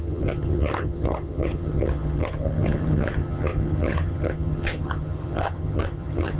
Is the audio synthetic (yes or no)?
yes